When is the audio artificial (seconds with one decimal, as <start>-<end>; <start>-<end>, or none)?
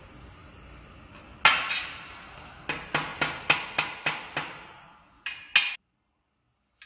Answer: none